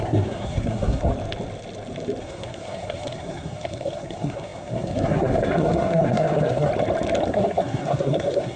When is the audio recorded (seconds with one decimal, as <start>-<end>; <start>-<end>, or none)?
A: 1.1-2.2; 6.7-7.3